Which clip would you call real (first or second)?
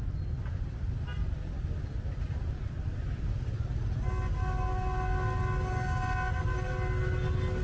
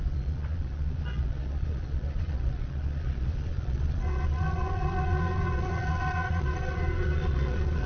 first